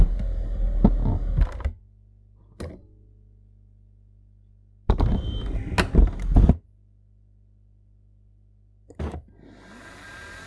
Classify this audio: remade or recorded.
recorded